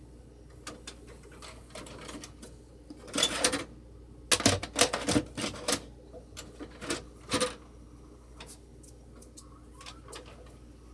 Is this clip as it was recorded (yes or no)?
yes